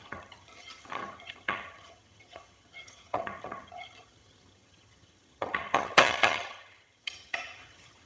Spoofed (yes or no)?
yes